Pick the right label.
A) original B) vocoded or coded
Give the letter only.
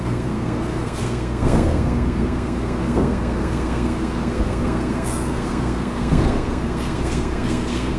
B